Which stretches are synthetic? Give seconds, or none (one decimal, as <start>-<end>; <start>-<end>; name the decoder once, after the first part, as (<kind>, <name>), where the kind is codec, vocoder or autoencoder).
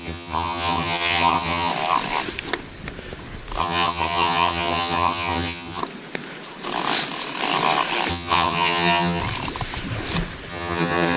0.0-1.7 (vocoder, HiFi-GAN); 3.6-5.8; 8.1-9.2; 10.5-11.2